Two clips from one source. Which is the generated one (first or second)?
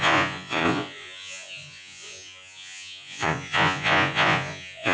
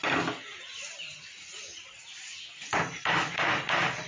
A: first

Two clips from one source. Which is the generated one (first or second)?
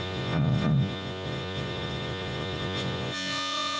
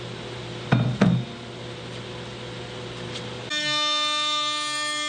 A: first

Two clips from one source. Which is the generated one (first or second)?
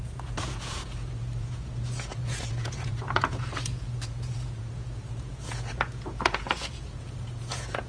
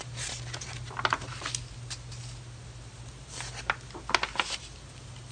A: first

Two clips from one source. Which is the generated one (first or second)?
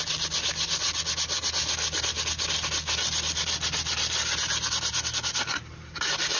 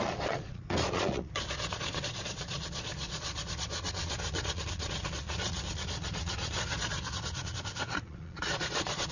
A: second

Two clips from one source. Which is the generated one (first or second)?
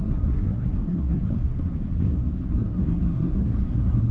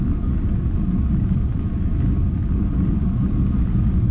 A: first